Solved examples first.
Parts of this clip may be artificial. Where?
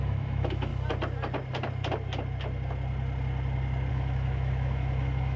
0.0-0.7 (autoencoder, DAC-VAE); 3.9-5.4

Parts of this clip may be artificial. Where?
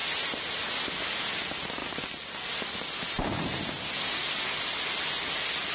none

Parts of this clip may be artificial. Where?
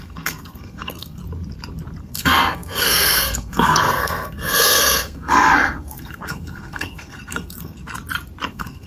0.0-1.2 (codec, SNAC); 2.0-7.8; 8.5-8.9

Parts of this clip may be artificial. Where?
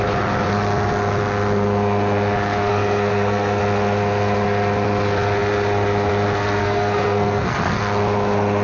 2.7-3.6 (codec, SNAC); 6.6-7.8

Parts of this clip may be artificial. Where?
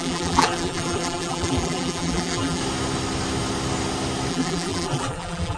0.0-2.6 (vocoder, BigVGAN v2); 4.3-5.6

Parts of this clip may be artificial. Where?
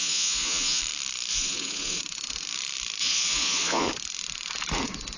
0.0-0.8 (vocoder, Vocos); 1.3-2.0; 3.0-3.9